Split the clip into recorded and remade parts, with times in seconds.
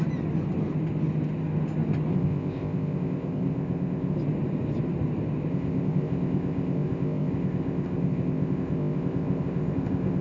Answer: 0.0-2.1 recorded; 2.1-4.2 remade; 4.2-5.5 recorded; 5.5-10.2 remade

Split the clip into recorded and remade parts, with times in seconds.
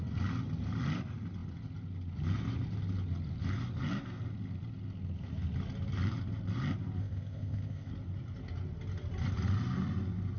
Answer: 0.0-7.0 recorded; 7.0-7.9 remade; 7.9-10.4 recorded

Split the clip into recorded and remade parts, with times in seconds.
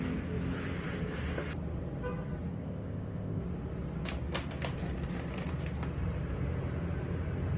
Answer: 0.0-2.5 recorded; 2.5-3.4 remade; 3.4-7.6 recorded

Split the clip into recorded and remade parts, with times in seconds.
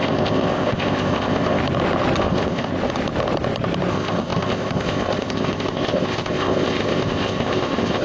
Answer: 0.0-1.6 remade; 1.6-2.2 recorded; 2.2-2.7 remade; 2.7-3.9 recorded; 3.9-8.0 remade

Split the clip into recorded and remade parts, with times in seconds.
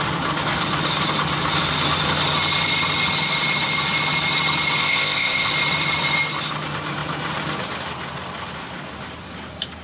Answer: 0.0-4.8 recorded; 4.8-5.5 remade; 5.5-9.8 recorded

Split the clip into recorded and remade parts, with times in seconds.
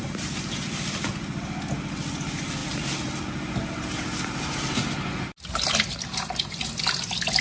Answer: 0.0-7.4 recorded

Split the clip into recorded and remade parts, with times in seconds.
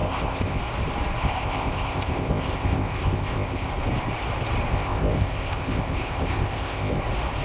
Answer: 0.0-0.6 remade; 0.6-1.2 recorded; 1.2-3.7 remade; 3.7-4.7 recorded; 4.7-7.0 remade; 7.0-7.4 recorded